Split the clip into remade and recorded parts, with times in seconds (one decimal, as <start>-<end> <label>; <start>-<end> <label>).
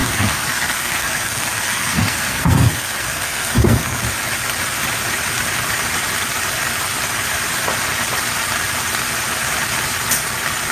0.0-4.0 remade; 4.0-10.7 recorded